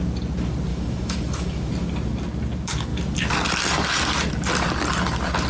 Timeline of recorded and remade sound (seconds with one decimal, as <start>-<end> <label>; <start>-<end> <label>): 0.0-0.7 recorded; 0.7-1.7 remade; 1.7-5.5 recorded